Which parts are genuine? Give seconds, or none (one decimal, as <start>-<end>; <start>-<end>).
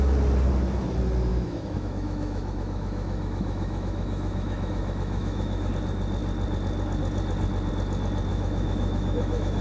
0.0-1.3; 5.7-8.3